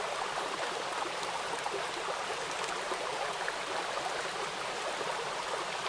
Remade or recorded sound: recorded